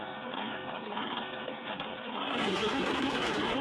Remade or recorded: remade